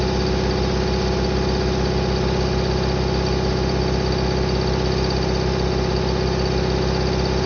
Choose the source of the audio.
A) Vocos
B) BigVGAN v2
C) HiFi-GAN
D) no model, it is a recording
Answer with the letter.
D